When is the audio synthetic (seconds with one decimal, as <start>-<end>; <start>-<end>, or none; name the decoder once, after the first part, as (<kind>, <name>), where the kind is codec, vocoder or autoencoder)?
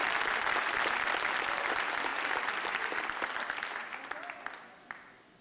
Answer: none